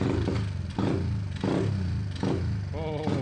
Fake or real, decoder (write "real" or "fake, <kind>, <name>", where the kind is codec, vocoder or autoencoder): real